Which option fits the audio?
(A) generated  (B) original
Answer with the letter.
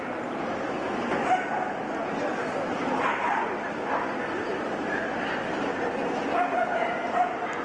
B